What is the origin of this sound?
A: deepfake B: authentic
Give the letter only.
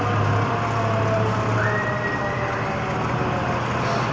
B